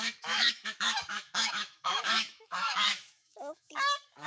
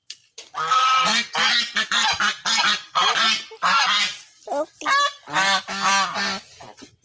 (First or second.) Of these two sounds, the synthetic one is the first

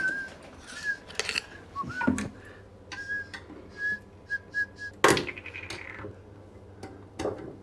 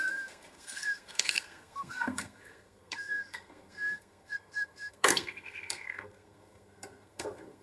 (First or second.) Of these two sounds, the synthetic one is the second